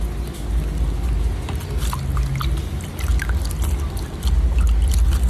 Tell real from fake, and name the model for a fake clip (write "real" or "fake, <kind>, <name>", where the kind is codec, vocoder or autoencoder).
real